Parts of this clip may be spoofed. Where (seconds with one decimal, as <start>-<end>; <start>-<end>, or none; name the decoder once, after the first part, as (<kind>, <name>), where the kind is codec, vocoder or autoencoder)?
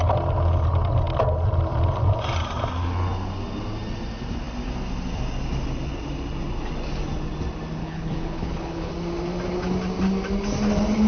7.8-8.9 (codec, HILCodec)